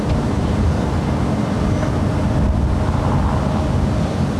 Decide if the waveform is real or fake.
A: real